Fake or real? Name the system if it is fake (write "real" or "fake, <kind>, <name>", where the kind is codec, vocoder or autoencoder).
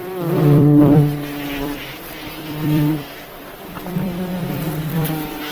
fake, vocoder, BigVGAN v2